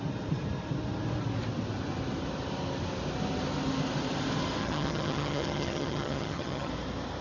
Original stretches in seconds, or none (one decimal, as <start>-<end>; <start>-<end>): 0.0-4.6; 6.7-7.2